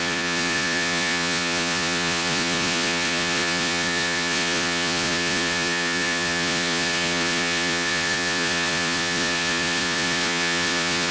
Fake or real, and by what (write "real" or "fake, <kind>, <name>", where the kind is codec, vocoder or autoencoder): fake, vocoder, Vocos